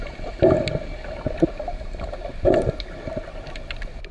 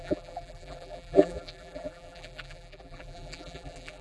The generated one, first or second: second